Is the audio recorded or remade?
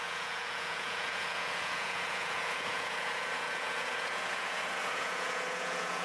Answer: remade